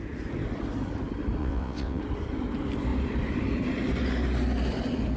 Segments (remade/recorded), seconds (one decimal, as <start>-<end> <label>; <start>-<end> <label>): 0.0-1.4 recorded; 1.4-2.0 remade; 2.0-5.2 recorded